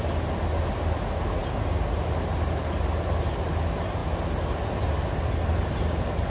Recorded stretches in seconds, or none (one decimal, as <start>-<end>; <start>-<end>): 0.0-6.3